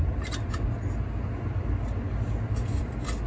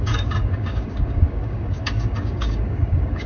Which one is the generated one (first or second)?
second